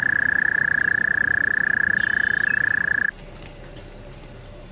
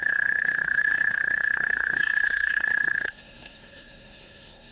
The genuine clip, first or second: first